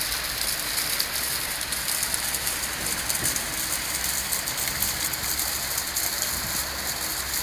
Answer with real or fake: real